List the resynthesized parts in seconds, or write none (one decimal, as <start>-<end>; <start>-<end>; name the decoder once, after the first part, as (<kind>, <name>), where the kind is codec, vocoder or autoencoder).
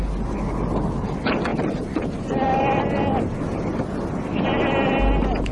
1.5-2.8 (vocoder, BigVGAN v2)